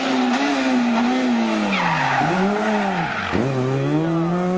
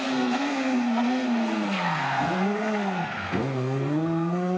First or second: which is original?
first